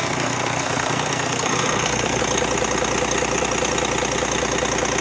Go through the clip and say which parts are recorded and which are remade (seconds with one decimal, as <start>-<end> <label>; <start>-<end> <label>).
0.0-2.2 remade; 2.2-5.0 recorded